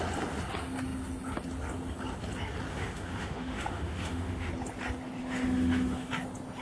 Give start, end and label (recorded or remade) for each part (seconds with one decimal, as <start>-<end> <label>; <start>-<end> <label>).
0.0-2.7 recorded; 2.7-4.5 remade; 4.5-5.2 recorded; 5.2-6.1 remade; 6.1-6.6 recorded